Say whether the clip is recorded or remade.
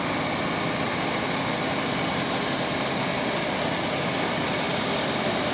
recorded